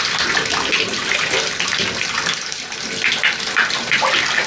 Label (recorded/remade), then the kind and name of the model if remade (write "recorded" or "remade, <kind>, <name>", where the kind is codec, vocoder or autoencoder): recorded